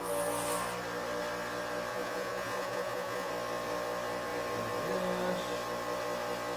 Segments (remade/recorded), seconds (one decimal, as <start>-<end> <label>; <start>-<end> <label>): 0.0-1.9 recorded; 1.9-3.3 remade; 3.3-6.6 recorded